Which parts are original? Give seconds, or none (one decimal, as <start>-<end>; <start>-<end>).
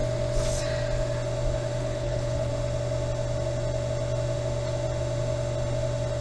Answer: 0.0-1.8; 2.5-6.2